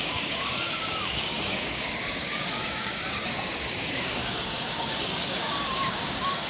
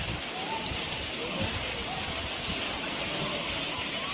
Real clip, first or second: second